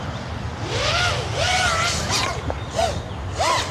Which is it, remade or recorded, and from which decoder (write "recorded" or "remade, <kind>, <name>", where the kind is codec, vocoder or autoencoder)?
recorded